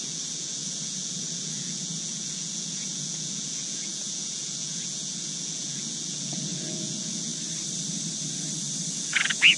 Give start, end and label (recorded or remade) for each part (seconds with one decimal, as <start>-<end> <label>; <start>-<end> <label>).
0.0-7.3 remade; 7.3-8.9 recorded; 8.9-9.6 remade